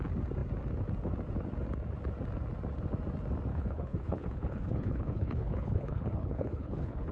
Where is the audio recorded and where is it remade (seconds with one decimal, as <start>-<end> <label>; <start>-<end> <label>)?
0.0-3.5 recorded; 3.5-7.1 remade